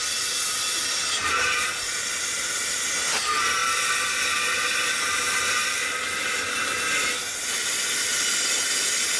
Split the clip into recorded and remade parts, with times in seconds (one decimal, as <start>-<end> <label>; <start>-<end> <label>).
0.0-9.2 recorded